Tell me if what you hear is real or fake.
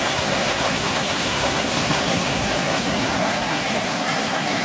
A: fake